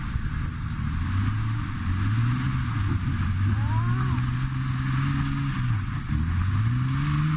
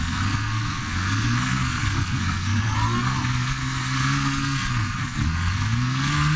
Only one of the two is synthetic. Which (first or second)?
second